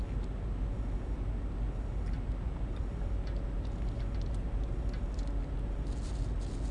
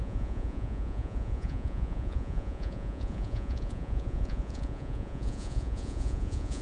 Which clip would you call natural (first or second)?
first